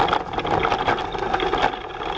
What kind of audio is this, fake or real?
real